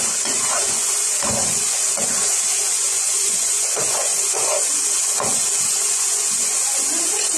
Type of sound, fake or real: fake